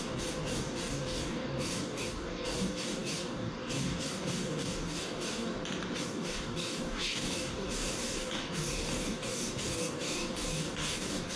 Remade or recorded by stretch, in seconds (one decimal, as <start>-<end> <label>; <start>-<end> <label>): 0.0-5.5 remade; 5.5-6.0 recorded; 6.0-11.4 remade